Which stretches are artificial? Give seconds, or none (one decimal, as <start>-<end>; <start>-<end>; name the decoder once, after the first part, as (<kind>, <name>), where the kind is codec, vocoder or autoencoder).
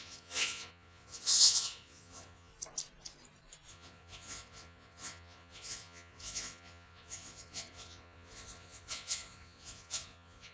0.0-2.5 (vocoder, Vocos); 3.7-10.5